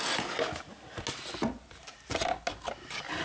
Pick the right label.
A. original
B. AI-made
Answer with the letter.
A